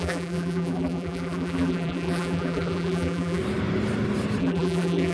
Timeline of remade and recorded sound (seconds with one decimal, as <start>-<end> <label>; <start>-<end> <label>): 0.0-3.4 remade; 3.4-4.4 recorded; 4.4-5.1 remade